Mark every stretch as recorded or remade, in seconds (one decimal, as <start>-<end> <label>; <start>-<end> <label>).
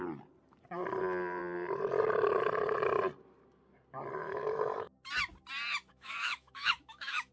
0.0-4.2 recorded; 4.2-4.9 remade; 4.9-5.9 recorded; 5.9-7.3 remade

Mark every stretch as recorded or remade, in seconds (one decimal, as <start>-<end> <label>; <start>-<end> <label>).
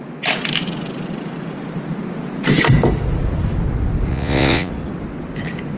0.0-4.1 recorded; 4.1-4.7 remade; 4.7-5.8 recorded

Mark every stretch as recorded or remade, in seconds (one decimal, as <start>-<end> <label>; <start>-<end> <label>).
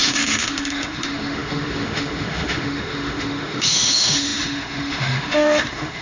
0.0-6.0 remade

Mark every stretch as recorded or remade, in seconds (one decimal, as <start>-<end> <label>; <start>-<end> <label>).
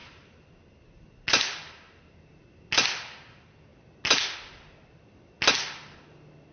0.0-6.5 recorded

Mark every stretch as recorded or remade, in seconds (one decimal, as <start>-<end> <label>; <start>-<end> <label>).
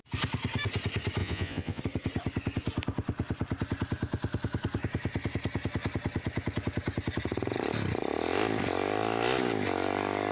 0.0-1.2 recorded; 1.2-1.8 remade; 1.8-10.3 recorded